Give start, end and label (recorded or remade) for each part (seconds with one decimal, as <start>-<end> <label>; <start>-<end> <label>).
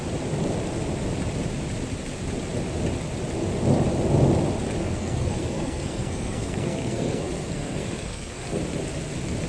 0.0-4.8 recorded; 4.8-8.6 remade; 8.6-9.5 recorded